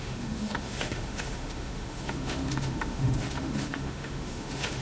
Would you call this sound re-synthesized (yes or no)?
yes